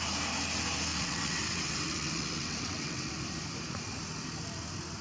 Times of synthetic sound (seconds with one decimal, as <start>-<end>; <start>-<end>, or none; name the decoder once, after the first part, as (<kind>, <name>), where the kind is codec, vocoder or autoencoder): 0.9-3.1 (vocoder, WaveNeXt)